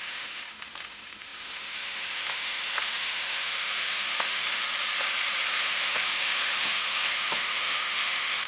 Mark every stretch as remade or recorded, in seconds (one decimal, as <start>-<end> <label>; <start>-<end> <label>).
0.0-4.6 remade; 4.6-5.5 recorded; 5.5-8.5 remade

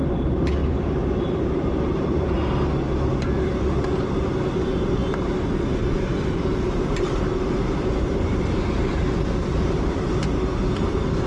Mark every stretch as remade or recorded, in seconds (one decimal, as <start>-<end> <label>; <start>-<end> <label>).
0.0-0.6 recorded; 0.6-2.7 remade; 2.7-3.1 recorded; 3.1-3.7 remade; 3.7-6.5 recorded; 6.5-10.2 remade; 10.2-11.3 recorded

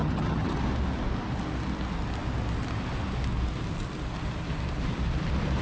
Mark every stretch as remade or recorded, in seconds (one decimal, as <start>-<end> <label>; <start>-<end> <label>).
0.0-0.6 remade; 0.6-5.6 recorded